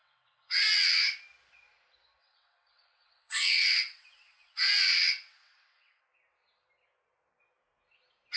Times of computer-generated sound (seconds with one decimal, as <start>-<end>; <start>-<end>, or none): 0.0-1.0; 2.2-6.0